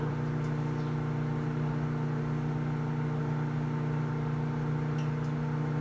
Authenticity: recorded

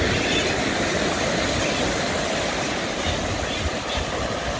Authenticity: recorded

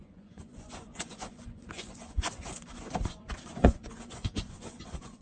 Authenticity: remade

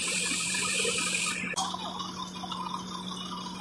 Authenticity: recorded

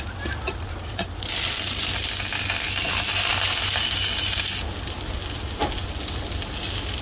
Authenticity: recorded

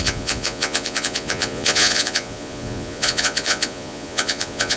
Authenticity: remade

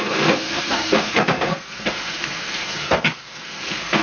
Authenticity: remade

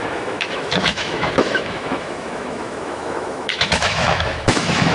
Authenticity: remade